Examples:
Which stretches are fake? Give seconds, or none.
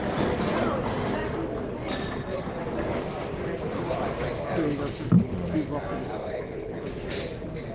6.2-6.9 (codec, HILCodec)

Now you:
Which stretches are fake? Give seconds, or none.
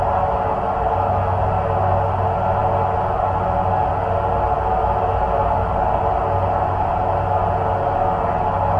none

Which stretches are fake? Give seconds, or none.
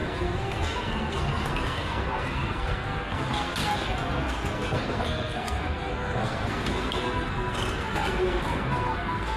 0.0-9.4 (codec, SNAC)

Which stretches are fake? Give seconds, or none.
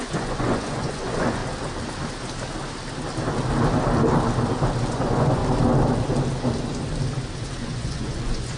0.0-1.4 (vocoder, Vocos); 4.9-5.4; 7.6-8.6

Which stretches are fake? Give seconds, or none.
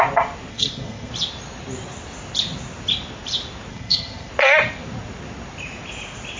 0.5-1.1 (codec, SNAC); 3.7-4.3